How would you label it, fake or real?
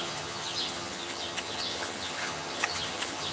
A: fake